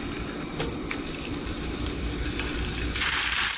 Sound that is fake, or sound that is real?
fake